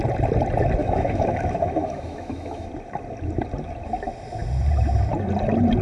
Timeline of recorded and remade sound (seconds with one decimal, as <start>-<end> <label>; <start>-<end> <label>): 0.0-0.8 recorded; 0.8-2.7 remade; 2.7-5.8 recorded